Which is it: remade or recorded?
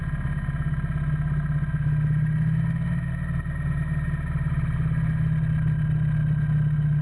recorded